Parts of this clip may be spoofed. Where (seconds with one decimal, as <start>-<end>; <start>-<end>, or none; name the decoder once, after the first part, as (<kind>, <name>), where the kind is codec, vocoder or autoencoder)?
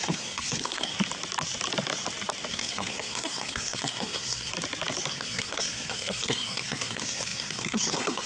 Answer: 0.0-0.9 (codec, SNAC); 2.5-4.5; 5.1-8.3